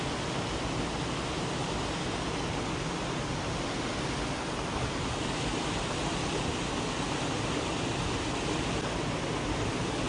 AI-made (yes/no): no